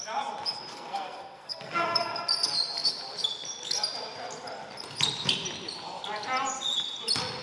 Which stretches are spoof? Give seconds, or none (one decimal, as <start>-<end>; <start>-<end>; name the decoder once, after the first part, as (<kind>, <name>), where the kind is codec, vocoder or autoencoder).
0.7-2.1 (codec, SNAC)